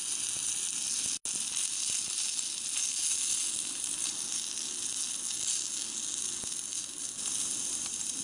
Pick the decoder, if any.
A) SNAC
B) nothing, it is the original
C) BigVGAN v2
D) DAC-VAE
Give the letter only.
B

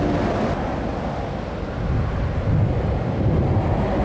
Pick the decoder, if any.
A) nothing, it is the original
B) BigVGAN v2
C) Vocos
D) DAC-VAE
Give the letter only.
A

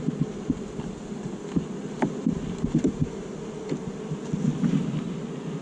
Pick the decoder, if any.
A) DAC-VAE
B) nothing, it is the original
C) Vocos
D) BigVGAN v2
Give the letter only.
B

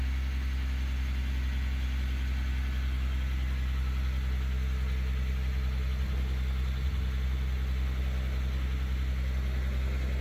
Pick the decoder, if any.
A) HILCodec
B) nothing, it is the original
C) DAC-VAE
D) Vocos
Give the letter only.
B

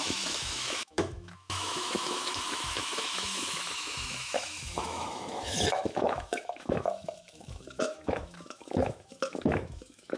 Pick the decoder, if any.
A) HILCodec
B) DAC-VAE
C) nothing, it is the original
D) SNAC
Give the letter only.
B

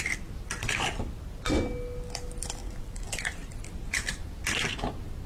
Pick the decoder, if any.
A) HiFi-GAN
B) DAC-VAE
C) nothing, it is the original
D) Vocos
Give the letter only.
C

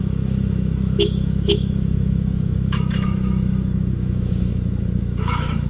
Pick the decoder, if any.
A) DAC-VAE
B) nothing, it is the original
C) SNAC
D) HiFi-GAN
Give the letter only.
A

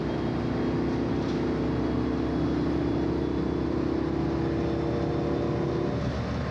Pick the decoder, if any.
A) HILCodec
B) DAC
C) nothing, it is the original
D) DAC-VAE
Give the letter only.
C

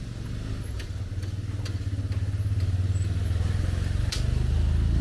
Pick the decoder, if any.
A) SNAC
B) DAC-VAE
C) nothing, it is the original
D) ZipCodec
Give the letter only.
C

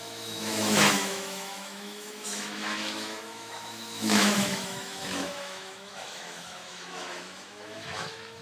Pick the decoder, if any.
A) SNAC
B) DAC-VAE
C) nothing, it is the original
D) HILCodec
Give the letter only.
B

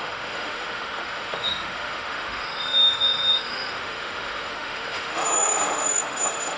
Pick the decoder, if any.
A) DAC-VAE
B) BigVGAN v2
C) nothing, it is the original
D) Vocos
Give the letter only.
A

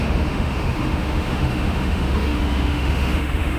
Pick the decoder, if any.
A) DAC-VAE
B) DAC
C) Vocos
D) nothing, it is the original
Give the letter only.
A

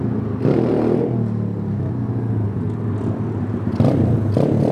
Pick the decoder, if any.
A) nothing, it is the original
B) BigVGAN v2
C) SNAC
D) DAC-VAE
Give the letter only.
A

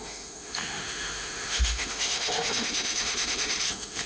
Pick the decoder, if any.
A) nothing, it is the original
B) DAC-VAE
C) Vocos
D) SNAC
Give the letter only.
B